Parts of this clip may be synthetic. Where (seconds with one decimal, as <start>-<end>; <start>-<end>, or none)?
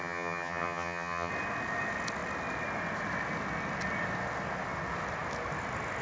0.0-1.3